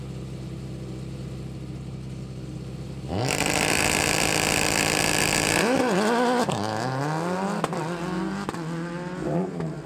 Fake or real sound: real